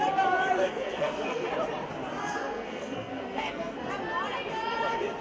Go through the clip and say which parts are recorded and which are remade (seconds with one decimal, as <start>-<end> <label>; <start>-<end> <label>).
0.0-0.6 recorded; 0.6-1.5 remade; 1.5-2.2 recorded; 2.2-3.9 remade; 3.9-5.2 recorded